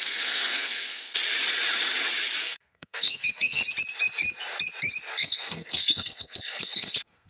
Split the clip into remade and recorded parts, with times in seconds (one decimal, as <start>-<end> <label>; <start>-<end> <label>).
0.0-1.2 remade; 1.2-2.4 recorded; 2.4-3.6 remade; 3.6-5.1 recorded; 5.1-7.3 remade